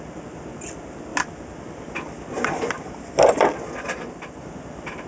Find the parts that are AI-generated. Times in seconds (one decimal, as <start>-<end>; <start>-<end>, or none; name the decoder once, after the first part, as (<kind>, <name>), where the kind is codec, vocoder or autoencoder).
none